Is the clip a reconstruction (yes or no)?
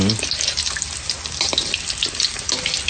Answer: no